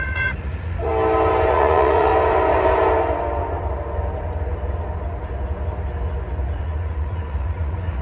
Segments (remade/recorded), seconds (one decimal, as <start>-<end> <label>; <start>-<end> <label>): 0.0-0.9 remade; 0.9-1.5 recorded; 1.5-2.1 remade; 2.1-6.6 recorded; 6.6-8.0 remade